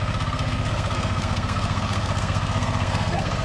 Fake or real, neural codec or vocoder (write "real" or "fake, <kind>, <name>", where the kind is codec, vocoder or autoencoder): fake, codec, SNAC